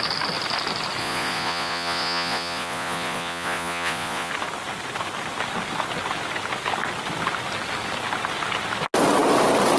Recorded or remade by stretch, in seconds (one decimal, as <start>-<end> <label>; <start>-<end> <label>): 0.0-1.0 recorded; 1.0-4.3 remade; 4.3-9.8 recorded

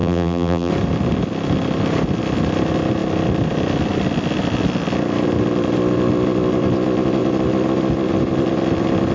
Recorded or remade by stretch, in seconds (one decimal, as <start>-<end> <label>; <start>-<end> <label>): 0.0-0.7 remade; 0.7-9.1 recorded

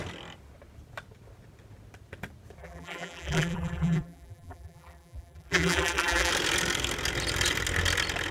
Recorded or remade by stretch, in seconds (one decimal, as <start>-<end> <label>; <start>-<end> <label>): 0.0-2.6 recorded; 2.6-6.3 remade; 6.3-8.3 recorded

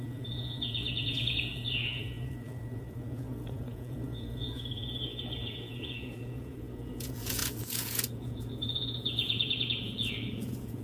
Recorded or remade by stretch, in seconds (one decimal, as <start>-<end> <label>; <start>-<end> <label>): 0.0-10.8 remade

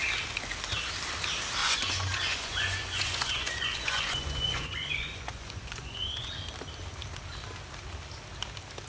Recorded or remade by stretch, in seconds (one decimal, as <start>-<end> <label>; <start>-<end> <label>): 0.0-1.6 recorded; 1.6-6.3 remade; 6.3-8.9 recorded

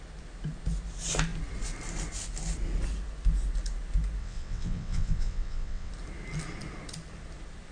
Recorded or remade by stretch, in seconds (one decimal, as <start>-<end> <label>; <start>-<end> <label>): 0.0-4.2 recorded; 4.2-5.9 remade; 5.9-7.7 recorded

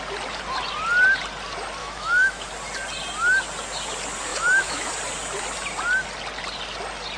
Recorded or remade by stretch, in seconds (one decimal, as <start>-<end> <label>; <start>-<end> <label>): 0.0-1.8 recorded; 1.8-2.5 remade; 2.5-4.3 recorded; 4.3-4.9 remade; 4.9-7.2 recorded